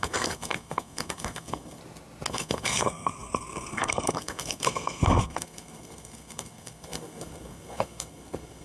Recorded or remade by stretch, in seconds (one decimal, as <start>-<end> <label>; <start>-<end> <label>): 0.0-1.8 remade; 1.8-2.3 recorded; 2.3-8.6 remade